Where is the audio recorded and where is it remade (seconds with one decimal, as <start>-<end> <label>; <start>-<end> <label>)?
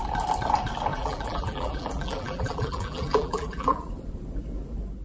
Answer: 0.0-0.9 recorded; 0.9-3.9 remade; 3.9-5.0 recorded